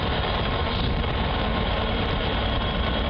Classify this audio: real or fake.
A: fake